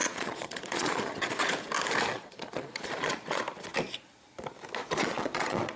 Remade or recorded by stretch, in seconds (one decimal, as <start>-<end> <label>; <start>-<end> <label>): 0.0-1.5 remade; 1.5-2.1 recorded; 2.1-3.4 remade; 3.4-4.8 recorded; 4.8-5.8 remade